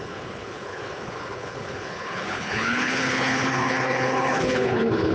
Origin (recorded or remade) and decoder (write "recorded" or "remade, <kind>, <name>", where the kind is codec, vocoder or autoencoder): remade, codec, HILCodec